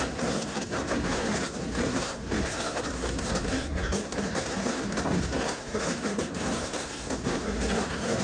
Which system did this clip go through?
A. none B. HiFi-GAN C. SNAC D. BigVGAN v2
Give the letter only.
C